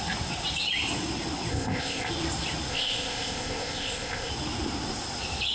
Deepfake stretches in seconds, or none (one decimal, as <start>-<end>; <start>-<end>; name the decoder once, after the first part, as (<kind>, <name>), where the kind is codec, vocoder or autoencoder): 1.5-2.1 (codec, ZipCodec); 2.7-4.3